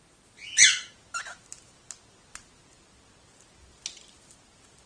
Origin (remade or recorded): recorded